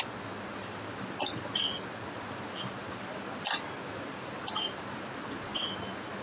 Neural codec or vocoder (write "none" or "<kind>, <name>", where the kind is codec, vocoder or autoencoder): none